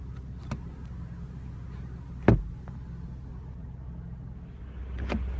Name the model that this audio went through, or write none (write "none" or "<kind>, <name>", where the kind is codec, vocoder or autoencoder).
none